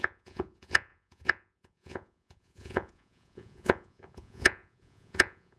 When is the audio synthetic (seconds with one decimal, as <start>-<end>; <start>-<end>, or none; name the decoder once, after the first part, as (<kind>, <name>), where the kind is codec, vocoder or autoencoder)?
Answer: 0.0-5.6 (vocoder, Vocos)